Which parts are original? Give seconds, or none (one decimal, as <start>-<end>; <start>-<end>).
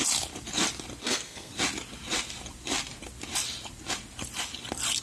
0.0-1.0; 1.5-5.0